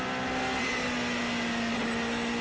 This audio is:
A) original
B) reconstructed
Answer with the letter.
A